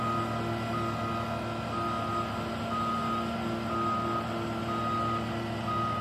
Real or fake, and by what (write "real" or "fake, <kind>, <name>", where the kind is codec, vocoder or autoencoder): real